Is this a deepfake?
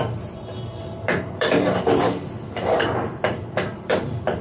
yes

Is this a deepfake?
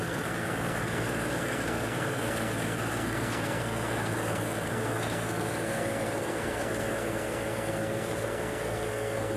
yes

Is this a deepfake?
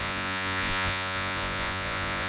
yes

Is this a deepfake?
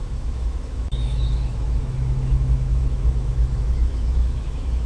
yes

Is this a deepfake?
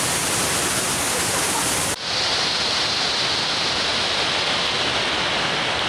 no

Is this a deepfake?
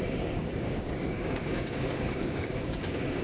yes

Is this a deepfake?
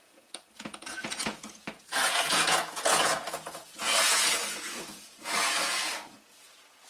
yes